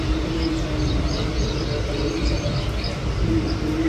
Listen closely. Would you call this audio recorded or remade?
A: recorded